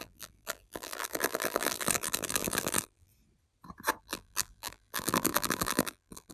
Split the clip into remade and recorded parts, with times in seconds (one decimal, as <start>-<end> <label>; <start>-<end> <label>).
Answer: 0.0-3.1 remade; 3.1-4.0 recorded; 4.0-6.3 remade